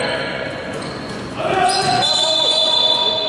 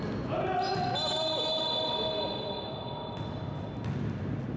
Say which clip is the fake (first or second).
first